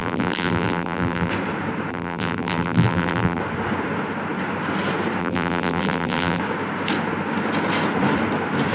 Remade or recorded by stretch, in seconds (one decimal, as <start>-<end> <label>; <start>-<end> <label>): 0.0-1.3 remade; 1.3-1.9 recorded; 1.9-3.4 remade; 3.4-5.2 recorded; 5.2-6.4 remade; 6.4-8.7 recorded